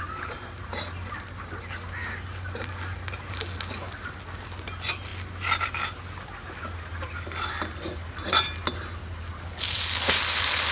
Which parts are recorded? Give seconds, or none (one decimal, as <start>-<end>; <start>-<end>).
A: 0.0-10.7